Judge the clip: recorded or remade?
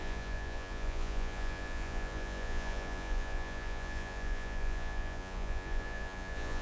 remade